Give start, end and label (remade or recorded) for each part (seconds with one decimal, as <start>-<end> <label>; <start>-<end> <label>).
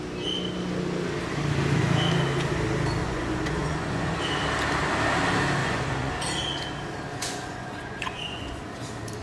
0.0-3.0 recorded; 3.0-4.2 remade; 4.2-5.6 recorded; 5.6-6.1 remade; 6.1-7.1 recorded; 7.1-8.6 remade; 8.6-9.2 recorded